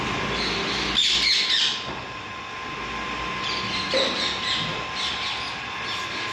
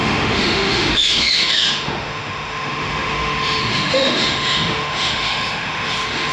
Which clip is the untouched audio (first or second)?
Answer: first